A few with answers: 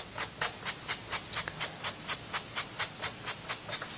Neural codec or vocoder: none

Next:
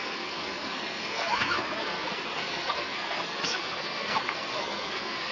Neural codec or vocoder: codec, SNAC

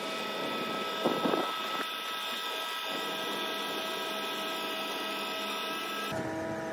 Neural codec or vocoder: none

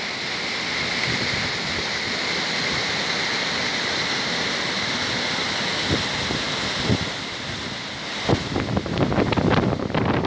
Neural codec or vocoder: none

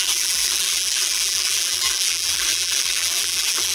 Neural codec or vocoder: vocoder, BigVGAN v2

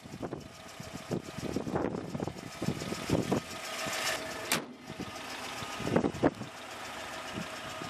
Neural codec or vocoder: none